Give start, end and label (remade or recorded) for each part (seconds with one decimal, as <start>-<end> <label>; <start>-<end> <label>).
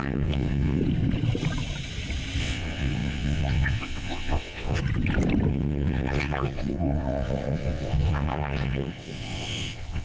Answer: 0.0-0.8 remade; 0.8-2.4 recorded; 2.4-4.8 remade; 4.8-5.5 recorded; 5.5-10.0 remade